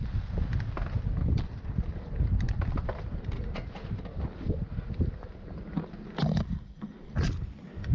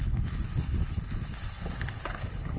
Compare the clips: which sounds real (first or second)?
first